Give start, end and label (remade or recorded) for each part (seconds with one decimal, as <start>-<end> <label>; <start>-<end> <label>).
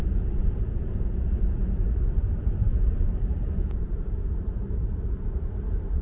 0.0-6.0 remade